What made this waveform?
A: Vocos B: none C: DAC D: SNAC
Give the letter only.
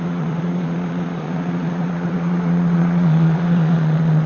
A